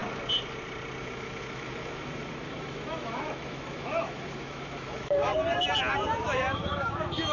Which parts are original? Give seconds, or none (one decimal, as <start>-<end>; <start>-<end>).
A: 0.0-1.0; 5.3-6.2